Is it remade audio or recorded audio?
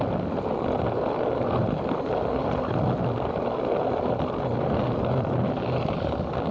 recorded